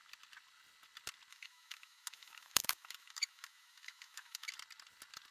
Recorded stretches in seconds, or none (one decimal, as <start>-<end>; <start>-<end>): 0.0-1.3; 4.5-5.3